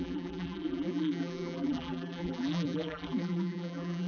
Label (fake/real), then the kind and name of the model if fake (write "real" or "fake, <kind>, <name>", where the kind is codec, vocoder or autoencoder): fake, vocoder, BigVGAN v2